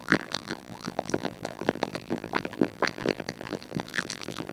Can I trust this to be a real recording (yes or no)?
no